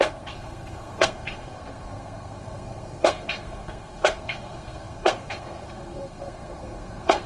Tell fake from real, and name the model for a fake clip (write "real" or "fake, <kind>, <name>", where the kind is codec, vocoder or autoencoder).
fake, codec, SNAC